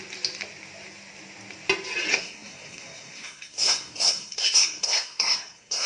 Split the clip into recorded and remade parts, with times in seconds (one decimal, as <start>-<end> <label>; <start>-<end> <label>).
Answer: 0.0-2.1 recorded; 2.1-5.9 remade